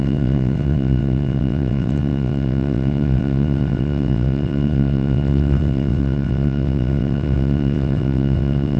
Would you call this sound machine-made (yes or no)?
yes